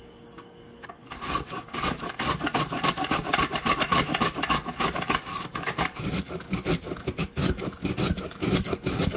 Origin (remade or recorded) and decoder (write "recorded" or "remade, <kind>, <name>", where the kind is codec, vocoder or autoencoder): remade, codec, DAC